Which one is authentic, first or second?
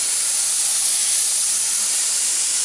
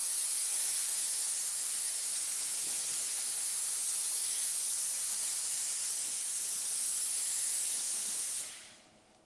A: first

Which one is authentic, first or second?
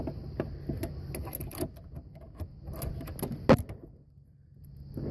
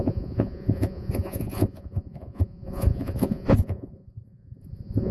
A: first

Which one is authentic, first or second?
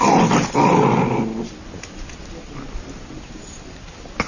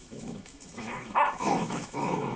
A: first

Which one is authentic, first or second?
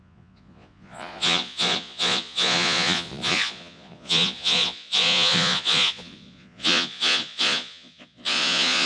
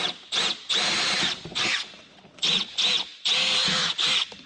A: second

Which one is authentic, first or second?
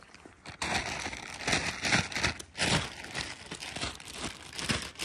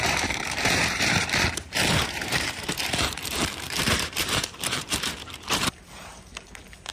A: first